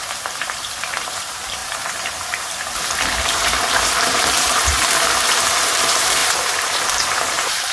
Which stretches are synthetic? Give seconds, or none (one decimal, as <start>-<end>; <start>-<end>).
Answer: 0.0-7.7